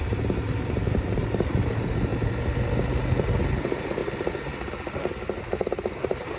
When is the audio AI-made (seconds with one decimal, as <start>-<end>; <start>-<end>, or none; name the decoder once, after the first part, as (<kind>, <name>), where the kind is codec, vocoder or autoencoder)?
0.0-2.1 (vocoder, BigVGAN v2); 3.5-4.0; 5.4-6.4